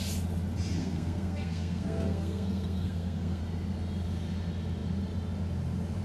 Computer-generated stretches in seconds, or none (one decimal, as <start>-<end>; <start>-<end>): 0.8-3.4